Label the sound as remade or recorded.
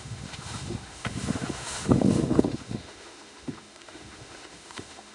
remade